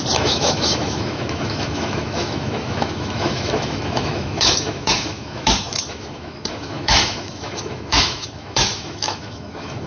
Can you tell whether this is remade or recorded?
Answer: remade